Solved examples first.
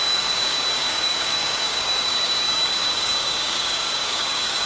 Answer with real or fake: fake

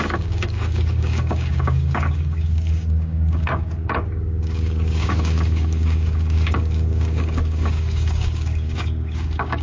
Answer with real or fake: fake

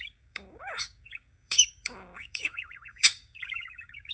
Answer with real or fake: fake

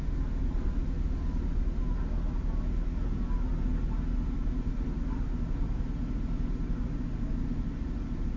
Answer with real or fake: real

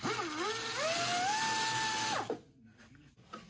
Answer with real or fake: real